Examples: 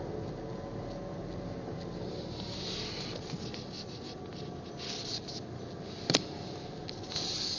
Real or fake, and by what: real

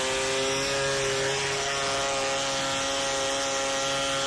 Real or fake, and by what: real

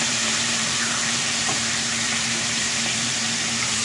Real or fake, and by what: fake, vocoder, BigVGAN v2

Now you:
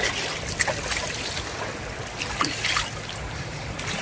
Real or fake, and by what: real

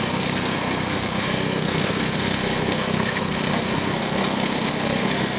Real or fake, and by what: fake, codec, SNAC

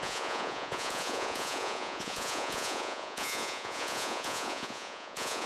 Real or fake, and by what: fake, vocoder, Vocos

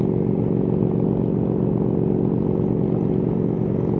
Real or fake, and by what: real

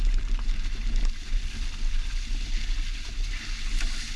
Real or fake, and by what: real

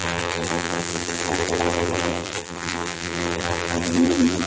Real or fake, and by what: fake, vocoder, BigVGAN v2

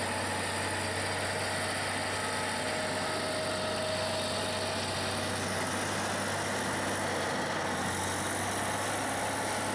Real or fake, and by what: real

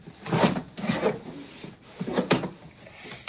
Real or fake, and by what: real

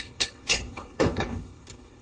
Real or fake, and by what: fake, codec, HILCodec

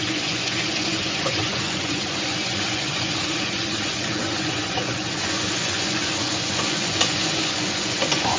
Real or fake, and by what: fake, vocoder, Vocos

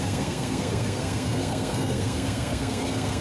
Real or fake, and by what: fake, codec, SNAC